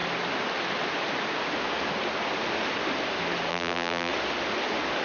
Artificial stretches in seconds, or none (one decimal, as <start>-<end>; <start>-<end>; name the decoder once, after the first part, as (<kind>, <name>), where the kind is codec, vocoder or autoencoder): 3.5-4.1 (vocoder, BigVGAN v2)